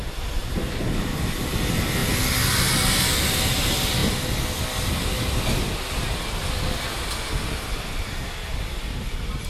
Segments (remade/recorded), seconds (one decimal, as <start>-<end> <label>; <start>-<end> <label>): 0.0-9.5 recorded